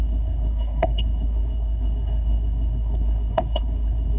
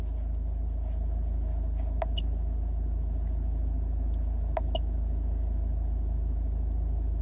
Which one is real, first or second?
second